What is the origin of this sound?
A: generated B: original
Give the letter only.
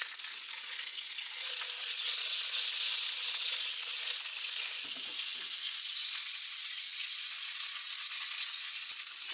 A